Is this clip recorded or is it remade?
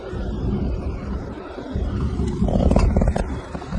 remade